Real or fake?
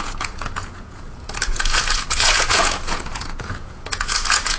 fake